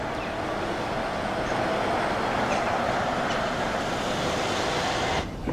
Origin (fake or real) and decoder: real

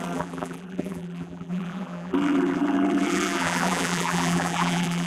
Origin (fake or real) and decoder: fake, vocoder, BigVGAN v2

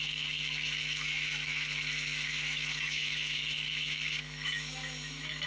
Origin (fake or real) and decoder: fake, autoencoder, DAC-VAE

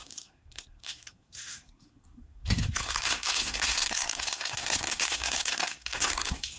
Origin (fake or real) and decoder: fake, codec, SNAC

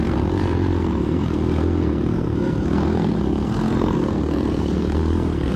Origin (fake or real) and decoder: fake, codec, SNAC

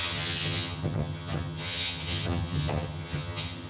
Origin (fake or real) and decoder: fake, vocoder, HiFi-GAN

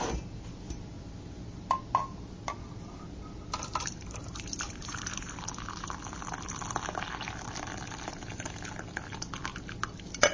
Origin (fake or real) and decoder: real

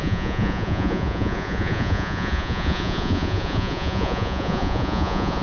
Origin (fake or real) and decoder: fake, vocoder, Vocos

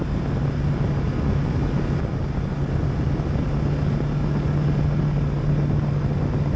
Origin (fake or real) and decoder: real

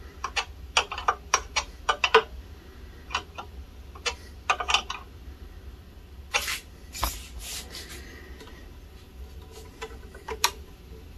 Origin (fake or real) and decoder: real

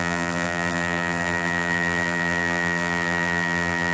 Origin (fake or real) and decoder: fake, vocoder, BigVGAN v2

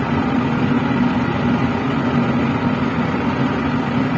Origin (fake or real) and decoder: real